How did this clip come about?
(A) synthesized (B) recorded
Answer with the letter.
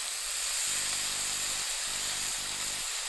B